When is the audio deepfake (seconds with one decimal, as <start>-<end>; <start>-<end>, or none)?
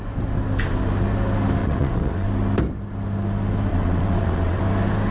1.6-2.3; 3.7-4.6